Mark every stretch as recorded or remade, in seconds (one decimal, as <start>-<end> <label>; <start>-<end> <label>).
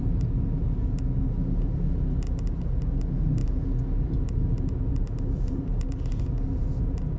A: 0.0-7.2 recorded